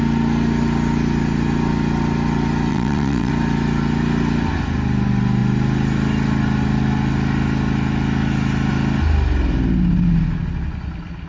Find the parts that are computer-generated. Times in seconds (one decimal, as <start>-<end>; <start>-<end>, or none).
2.7-3.3